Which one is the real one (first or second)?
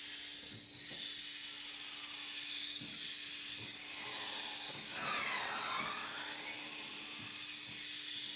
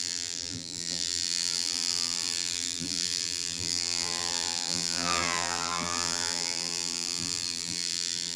first